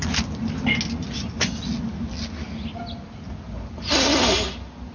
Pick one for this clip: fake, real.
real